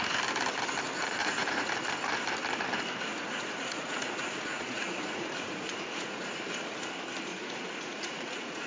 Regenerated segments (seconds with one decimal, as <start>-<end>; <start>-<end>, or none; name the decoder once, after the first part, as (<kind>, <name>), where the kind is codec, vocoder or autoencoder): 1.2-1.7 (vocoder, Vocos); 3.1-6.4; 7.3-8.7